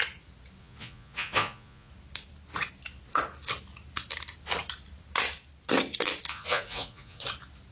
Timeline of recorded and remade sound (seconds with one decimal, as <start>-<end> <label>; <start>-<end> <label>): 0.0-0.6 recorded; 0.6-1.9 remade; 1.9-6.3 recorded; 6.3-7.2 remade; 7.2-7.7 recorded